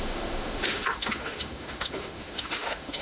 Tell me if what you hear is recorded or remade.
remade